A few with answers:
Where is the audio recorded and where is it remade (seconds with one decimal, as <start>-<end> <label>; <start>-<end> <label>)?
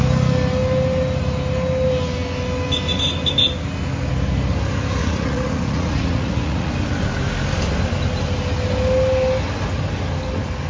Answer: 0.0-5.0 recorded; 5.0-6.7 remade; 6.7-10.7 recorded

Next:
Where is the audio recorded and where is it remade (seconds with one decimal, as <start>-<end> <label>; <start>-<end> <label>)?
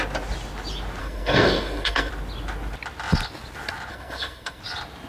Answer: 0.0-1.0 recorded; 1.0-2.1 remade; 2.1-3.9 recorded; 3.9-4.6 remade; 4.6-5.1 recorded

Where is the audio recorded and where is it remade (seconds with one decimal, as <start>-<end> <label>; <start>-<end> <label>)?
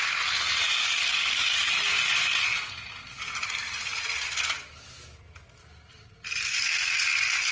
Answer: 0.0-0.8 recorded; 0.8-1.7 remade; 1.7-7.5 recorded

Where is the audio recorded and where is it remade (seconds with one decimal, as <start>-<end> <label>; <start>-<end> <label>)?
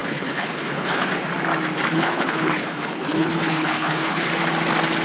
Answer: 0.0-1.1 remade; 1.1-1.9 recorded; 1.9-4.3 remade; 4.3-5.0 recorded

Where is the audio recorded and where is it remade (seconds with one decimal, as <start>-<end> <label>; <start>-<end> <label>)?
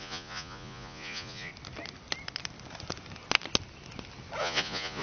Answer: 0.0-1.5 remade; 1.5-4.4 recorded; 4.4-5.0 remade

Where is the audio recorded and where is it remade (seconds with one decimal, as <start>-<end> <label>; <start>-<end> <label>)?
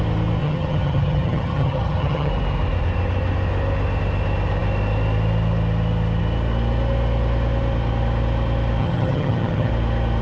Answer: 0.0-0.4 recorded; 0.4-2.3 remade; 2.3-8.8 recorded; 8.8-9.7 remade; 9.7-10.2 recorded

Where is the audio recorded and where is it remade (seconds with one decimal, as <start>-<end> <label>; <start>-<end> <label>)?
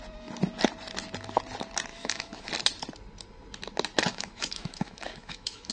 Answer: 0.0-1.9 recorded; 1.9-2.5 remade; 2.5-4.1 recorded; 4.1-5.7 remade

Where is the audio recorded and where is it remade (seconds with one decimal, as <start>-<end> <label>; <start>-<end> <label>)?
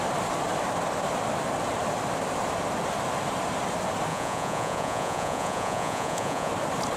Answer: 0.0-4.1 recorded; 4.1-6.5 remade; 6.5-7.0 recorded